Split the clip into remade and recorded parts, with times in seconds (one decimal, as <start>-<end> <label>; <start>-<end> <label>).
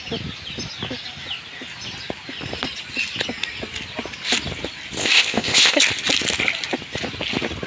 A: 0.0-5.0 recorded; 5.0-5.8 remade; 5.8-7.7 recorded